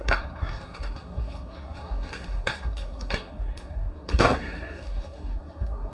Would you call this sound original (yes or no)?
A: no